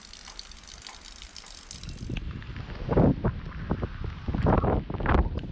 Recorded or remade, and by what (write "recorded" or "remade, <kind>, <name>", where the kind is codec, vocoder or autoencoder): recorded